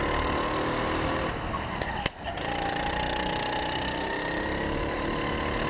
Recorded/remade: recorded